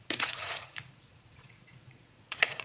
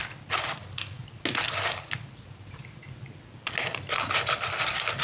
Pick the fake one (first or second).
first